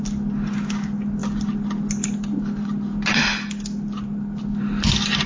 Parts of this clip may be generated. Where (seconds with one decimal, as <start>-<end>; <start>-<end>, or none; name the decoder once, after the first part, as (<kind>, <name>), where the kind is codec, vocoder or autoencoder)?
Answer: none